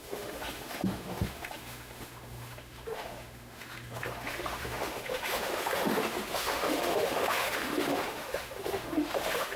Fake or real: fake